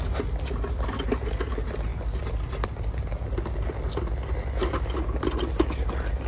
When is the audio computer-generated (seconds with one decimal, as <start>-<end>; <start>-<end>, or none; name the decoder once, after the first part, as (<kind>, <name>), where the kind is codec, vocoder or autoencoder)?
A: none

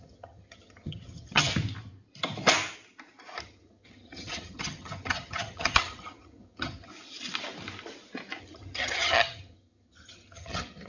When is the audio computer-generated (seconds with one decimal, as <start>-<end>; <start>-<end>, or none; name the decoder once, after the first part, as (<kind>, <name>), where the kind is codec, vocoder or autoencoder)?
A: 0.0-1.5 (vocoder, HiFi-GAN); 3.4-6.9; 8.4-10.9

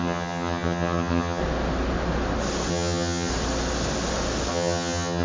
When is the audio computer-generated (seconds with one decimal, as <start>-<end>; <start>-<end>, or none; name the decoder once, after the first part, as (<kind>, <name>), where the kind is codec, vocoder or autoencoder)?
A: 0.0-1.4 (vocoder, HiFi-GAN); 2.7-3.3; 4.5-5.2

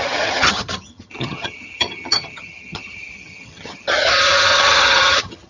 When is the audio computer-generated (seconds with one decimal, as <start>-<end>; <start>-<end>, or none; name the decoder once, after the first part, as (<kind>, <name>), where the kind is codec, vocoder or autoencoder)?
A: 0.0-5.5 (vocoder, HiFi-GAN)

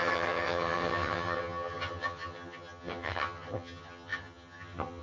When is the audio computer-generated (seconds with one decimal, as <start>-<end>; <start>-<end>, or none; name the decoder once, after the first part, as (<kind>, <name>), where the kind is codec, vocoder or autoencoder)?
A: 0.0-5.0 (vocoder, HiFi-GAN)